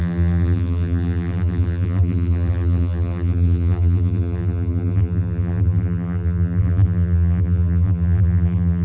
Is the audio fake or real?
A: fake